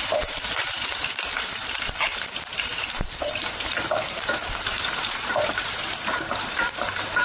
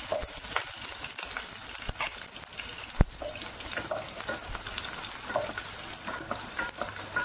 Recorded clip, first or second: second